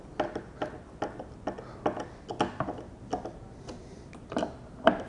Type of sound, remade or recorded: recorded